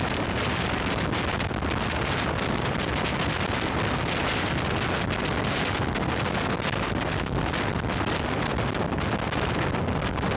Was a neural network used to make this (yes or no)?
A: no